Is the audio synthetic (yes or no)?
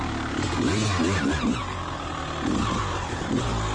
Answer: no